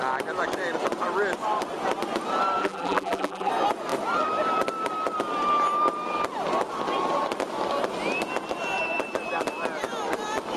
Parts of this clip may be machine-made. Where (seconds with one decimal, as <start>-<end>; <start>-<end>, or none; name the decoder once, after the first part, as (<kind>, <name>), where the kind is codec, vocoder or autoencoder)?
2.6-3.5 (vocoder, BigVGAN v2)